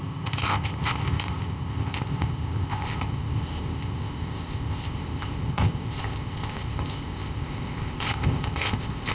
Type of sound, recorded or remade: remade